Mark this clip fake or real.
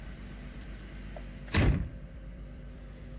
fake